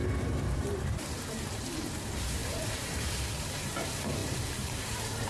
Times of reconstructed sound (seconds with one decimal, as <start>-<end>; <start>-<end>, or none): 0.0-5.3